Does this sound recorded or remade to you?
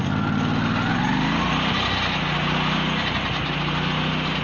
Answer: recorded